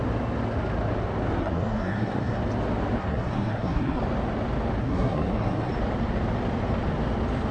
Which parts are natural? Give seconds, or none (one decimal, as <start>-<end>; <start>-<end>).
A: 0.0-1.4; 2.4-3.0; 4.0-4.8; 5.7-7.5